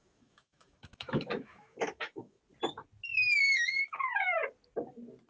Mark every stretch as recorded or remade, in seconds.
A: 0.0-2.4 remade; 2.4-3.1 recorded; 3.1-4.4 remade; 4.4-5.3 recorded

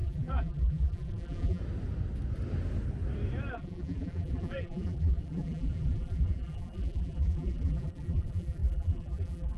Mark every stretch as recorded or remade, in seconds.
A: 0.0-1.6 remade; 1.6-3.5 recorded; 3.5-9.6 remade

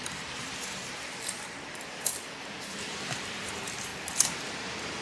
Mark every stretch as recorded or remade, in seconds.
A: 0.0-2.1 remade; 2.1-2.8 recorded; 2.8-3.9 remade; 3.9-4.6 recorded; 4.6-5.0 remade

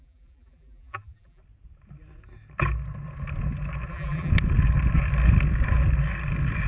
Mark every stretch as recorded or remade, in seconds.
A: 0.0-1.4 remade; 1.4-3.9 recorded; 3.9-4.3 remade; 4.3-6.7 recorded

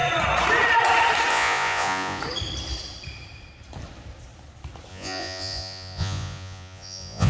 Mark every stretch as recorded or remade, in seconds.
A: 0.0-1.3 recorded; 1.3-2.2 remade; 2.2-4.9 recorded; 4.9-7.3 remade

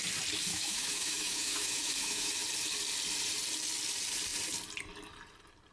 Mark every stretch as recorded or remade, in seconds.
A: 0.0-0.5 recorded; 0.5-2.3 remade; 2.3-5.7 recorded